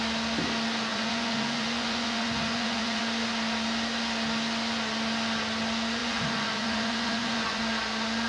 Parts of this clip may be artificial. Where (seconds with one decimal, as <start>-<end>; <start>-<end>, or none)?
0.9-3.0; 6.0-7.6